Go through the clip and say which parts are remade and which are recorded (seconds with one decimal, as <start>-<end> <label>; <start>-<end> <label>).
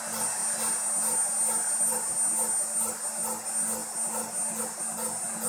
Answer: 0.0-5.5 recorded